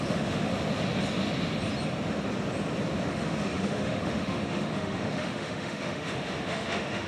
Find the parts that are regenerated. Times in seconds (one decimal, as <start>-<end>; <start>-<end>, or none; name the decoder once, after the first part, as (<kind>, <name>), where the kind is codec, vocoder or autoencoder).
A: 0.0-0.5 (autoencoder, DAC-VAE); 3.1-7.1